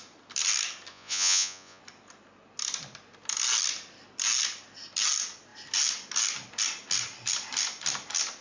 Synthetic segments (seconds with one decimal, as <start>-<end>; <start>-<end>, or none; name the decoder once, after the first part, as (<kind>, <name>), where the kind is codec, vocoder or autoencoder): 0.9-1.8 (vocoder, Vocos)